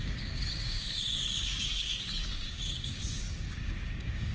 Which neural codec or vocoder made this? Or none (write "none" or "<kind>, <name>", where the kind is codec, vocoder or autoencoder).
codec, DAC